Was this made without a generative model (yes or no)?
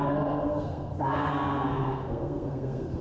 no